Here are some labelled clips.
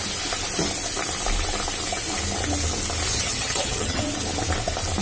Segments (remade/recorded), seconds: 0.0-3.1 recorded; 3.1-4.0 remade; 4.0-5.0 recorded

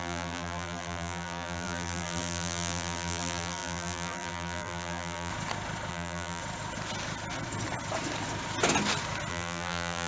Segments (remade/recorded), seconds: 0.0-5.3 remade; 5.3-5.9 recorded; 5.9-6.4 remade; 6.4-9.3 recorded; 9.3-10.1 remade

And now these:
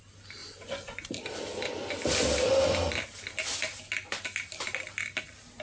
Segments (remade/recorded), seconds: 0.0-0.4 recorded; 0.4-1.1 remade; 1.1-5.6 recorded